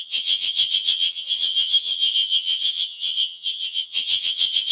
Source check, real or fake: fake